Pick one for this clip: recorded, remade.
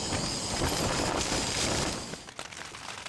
recorded